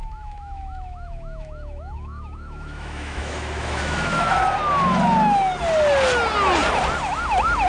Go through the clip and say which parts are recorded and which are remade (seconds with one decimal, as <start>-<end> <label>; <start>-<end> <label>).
0.0-4.4 remade; 4.4-7.7 recorded